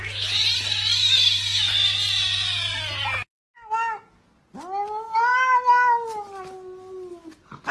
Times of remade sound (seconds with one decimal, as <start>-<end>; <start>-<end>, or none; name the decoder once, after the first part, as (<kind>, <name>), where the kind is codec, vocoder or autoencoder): none